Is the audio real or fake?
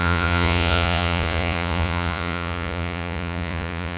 fake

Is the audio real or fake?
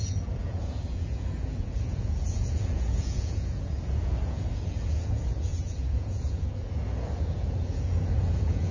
fake